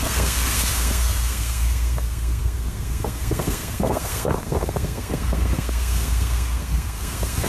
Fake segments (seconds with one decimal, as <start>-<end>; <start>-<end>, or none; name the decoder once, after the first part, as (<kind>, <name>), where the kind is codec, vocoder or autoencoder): 0.0-7.5 (codec, SNAC)